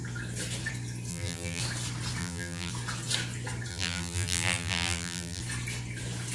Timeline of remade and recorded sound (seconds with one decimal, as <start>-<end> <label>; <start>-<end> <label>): 0.0-1.1 recorded; 1.1-1.6 remade; 1.6-2.2 recorded; 2.2-2.7 remade; 2.7-3.7 recorded; 3.7-5.4 remade; 5.4-6.3 recorded